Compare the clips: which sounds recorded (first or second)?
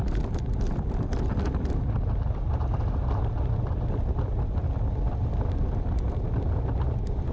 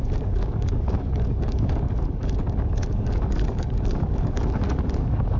first